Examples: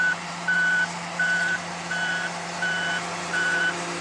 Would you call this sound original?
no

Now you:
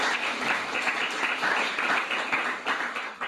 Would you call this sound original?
yes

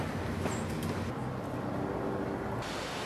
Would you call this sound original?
yes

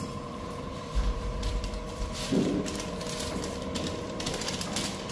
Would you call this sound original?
no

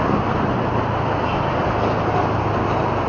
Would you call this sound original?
yes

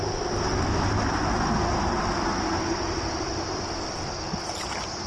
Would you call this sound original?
yes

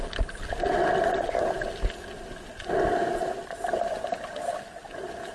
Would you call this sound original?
yes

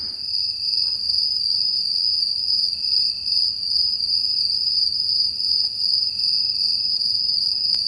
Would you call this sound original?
yes